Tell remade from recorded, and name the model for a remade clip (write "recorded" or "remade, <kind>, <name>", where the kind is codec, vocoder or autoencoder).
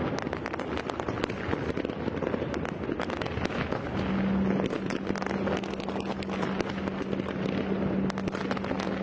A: recorded